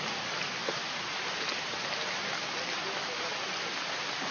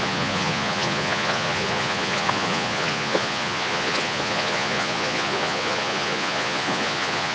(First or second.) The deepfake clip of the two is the second